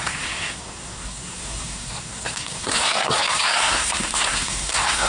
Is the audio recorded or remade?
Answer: remade